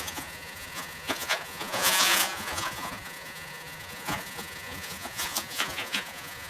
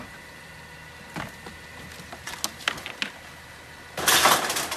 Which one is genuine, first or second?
second